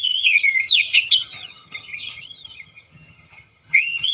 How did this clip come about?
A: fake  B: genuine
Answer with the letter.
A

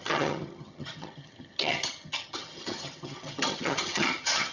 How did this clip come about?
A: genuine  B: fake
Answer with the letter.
B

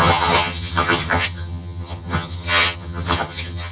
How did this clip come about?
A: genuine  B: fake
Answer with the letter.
B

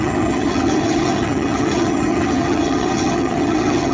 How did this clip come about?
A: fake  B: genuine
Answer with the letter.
A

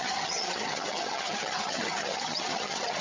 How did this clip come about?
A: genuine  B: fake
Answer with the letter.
B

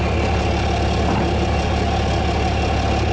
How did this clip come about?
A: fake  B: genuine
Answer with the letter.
B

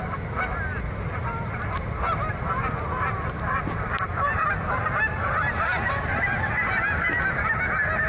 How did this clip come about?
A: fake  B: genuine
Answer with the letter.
B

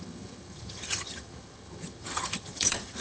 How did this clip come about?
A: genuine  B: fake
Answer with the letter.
B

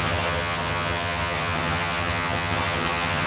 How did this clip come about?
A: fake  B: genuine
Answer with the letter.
A